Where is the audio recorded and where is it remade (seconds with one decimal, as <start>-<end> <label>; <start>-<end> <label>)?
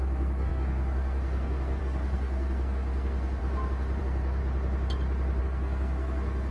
0.0-3.4 remade; 3.4-4.0 recorded; 4.0-4.4 remade; 4.4-5.4 recorded; 5.4-6.5 remade